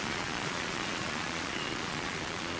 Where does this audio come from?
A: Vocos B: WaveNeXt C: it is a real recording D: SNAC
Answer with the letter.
A